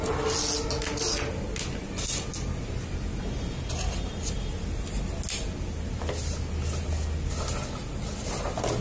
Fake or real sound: real